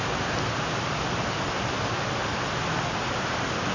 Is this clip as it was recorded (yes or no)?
yes